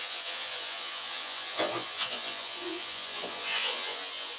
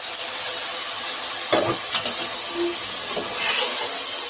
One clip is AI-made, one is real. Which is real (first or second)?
second